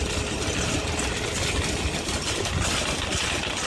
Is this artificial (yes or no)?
no